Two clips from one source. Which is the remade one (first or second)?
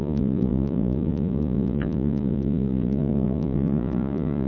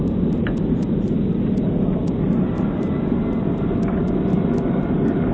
first